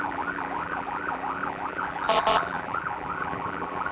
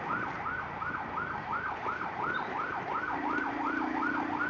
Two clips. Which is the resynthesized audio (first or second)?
first